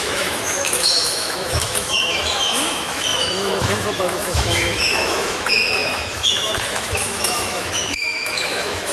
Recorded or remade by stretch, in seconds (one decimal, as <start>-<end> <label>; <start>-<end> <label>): 0.0-8.9 remade